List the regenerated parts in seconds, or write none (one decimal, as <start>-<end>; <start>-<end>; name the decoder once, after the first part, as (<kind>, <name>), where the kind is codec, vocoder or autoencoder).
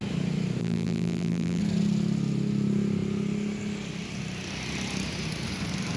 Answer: 0.6-1.6 (vocoder, BigVGAN v2)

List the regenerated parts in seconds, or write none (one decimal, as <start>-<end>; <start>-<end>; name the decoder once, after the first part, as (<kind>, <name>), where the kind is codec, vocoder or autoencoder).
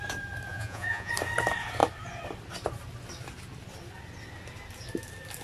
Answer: 0.5-1.1 (vocoder, Vocos)